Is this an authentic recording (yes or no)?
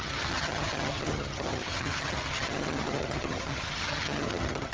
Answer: no